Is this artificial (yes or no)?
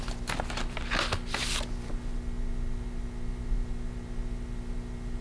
no